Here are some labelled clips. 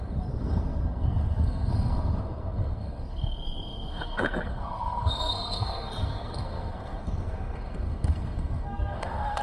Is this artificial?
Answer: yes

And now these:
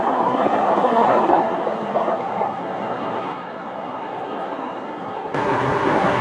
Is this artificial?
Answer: yes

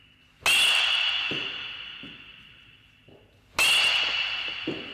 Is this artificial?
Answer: no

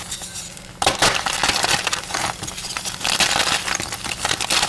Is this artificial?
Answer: no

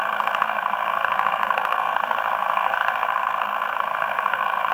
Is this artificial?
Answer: yes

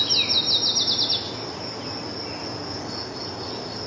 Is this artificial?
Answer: no